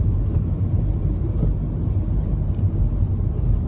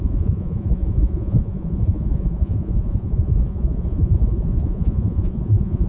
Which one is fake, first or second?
second